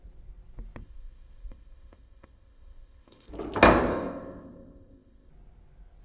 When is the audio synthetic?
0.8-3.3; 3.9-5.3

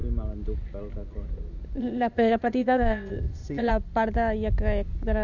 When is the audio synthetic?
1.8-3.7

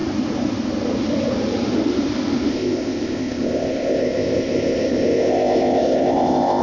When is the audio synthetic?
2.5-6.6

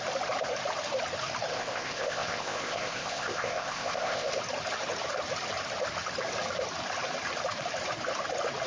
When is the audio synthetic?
1.5-4.4